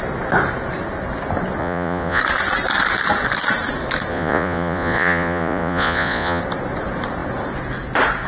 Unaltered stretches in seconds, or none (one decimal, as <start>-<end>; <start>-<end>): 0.0-1.6; 2.2-4.1; 6.4-8.3